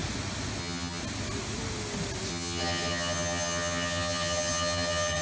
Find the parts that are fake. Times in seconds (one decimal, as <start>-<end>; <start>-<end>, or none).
0.6-1.0; 2.3-5.2